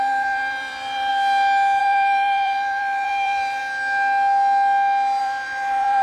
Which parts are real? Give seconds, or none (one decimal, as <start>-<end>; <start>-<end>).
1.1-1.8; 3.6-5.2